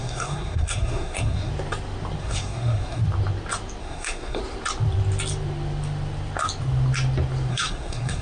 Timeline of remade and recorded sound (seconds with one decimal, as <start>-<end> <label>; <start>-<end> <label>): 0.0-1.5 remade; 1.5-2.2 recorded; 2.2-3.0 remade; 3.0-3.8 recorded; 3.8-4.4 remade; 4.4-7.5 recorded; 7.5-8.2 remade